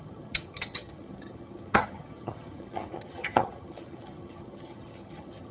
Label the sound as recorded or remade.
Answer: remade